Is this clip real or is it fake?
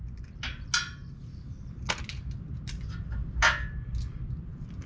real